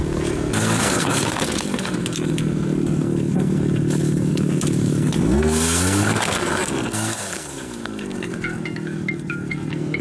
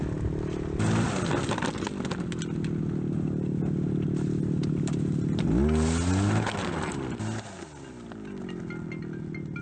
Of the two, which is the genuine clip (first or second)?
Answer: second